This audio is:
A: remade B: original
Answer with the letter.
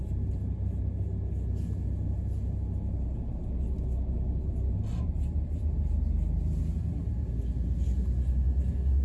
B